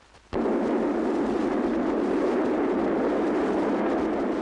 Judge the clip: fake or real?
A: real